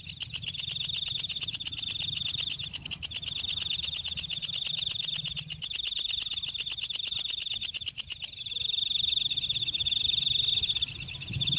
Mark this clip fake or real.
real